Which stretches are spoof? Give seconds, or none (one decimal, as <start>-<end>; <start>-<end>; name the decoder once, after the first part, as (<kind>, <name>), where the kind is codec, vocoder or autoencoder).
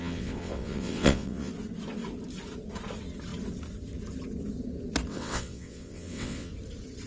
0.0-1.5 (vocoder, WaveNeXt); 5.1-6.5